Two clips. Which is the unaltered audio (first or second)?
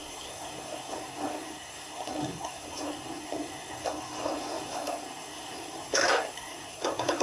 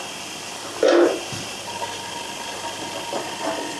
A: second